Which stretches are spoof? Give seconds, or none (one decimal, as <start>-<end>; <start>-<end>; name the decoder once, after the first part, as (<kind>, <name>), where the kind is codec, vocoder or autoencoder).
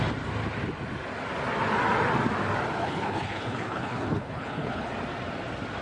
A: 2.8-4.9 (codec, HILCodec)